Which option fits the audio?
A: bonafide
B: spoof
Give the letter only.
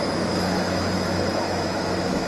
B